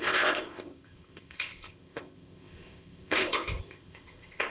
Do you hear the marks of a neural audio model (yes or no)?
yes